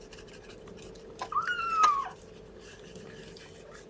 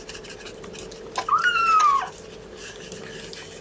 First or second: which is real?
second